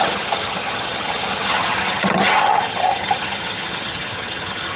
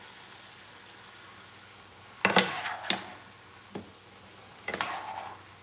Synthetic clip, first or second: first